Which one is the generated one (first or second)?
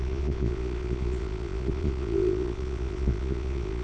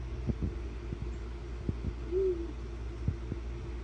first